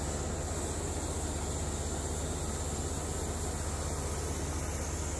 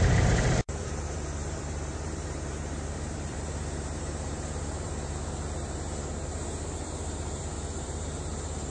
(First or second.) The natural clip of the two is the first